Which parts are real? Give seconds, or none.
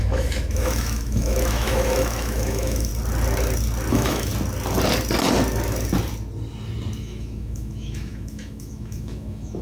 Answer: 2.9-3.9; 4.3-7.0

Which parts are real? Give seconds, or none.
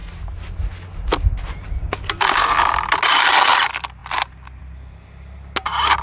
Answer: 0.0-6.0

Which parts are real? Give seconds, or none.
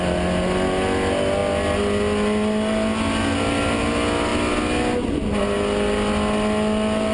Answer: 0.0-7.1